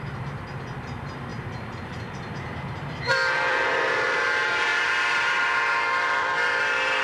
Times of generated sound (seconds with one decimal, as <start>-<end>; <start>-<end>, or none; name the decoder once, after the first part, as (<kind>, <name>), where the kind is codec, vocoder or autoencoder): 0.0-7.0 (vocoder, BigVGAN v2)

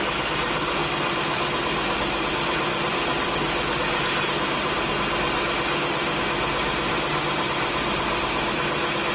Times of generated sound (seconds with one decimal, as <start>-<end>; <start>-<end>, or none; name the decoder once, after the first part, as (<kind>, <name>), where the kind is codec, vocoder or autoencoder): 0.8-4.9 (vocoder, BigVGAN v2)

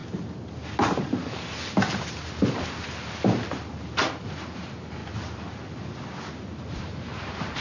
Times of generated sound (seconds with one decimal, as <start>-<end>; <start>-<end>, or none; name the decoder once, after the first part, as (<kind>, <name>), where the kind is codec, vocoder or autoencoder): 4.3-5.0 (vocoder, BigVGAN v2); 6.6-7.6